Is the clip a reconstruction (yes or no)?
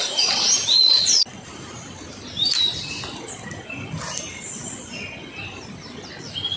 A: no